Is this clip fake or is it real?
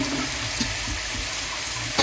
real